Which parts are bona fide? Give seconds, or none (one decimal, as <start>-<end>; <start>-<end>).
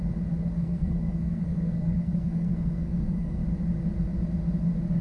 0.0-0.5; 3.4-5.0